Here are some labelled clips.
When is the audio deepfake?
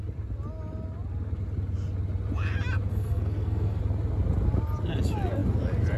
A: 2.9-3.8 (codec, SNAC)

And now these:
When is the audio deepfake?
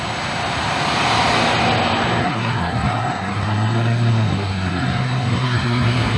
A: 2.2-6.2 (codec, SNAC)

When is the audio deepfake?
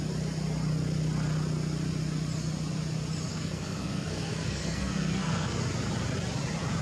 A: 3.3-5.6 (codec, SNAC)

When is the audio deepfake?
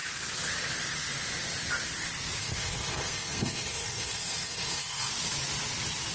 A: 2.4-5.1 (codec, SNAC)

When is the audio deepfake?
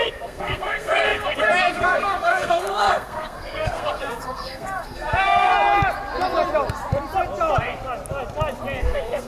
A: 0.0-5.5 (codec, SNAC); 8.8-9.3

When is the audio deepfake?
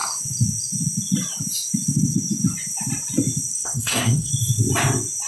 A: 3.5-4.3 (codec, SNAC)